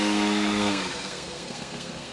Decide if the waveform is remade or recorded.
remade